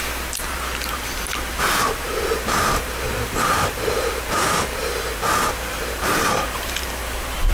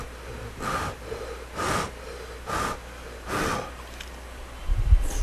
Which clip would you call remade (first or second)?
first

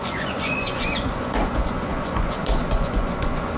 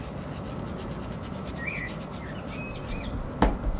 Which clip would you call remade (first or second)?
first